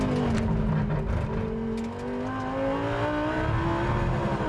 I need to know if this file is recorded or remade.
recorded